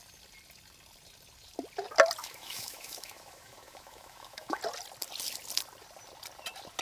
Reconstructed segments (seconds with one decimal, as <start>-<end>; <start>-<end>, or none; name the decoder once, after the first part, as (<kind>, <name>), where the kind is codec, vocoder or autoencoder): 2.2-4.6 (autoencoder, DAC-VAE)